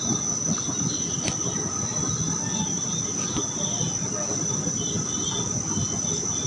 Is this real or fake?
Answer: real